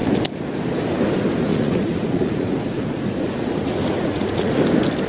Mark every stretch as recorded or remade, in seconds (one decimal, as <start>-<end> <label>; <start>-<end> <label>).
0.0-1.5 recorded; 1.5-4.6 remade; 4.6-5.1 recorded